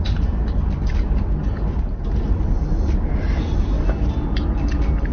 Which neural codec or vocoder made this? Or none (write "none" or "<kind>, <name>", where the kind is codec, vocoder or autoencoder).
none